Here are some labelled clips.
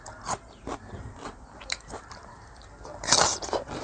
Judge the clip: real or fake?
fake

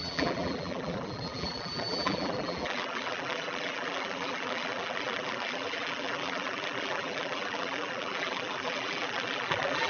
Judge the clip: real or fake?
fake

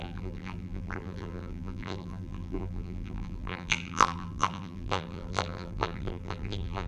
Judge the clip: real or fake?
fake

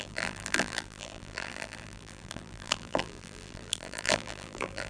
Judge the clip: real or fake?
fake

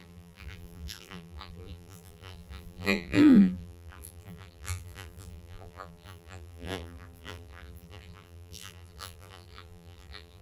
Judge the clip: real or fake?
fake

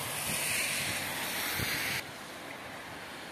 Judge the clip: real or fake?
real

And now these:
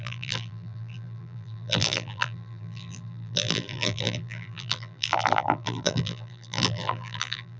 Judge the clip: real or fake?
fake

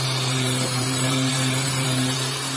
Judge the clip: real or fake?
fake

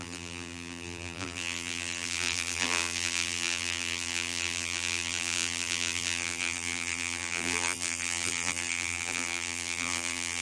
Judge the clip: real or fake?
fake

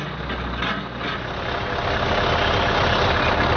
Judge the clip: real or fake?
real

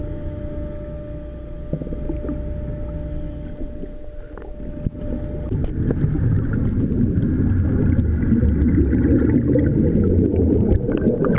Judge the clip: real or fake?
real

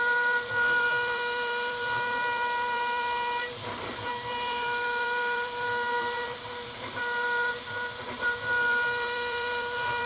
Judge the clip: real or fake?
fake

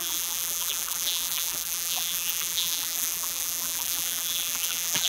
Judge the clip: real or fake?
fake